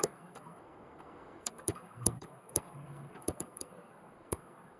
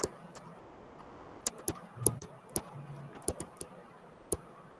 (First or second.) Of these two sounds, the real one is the second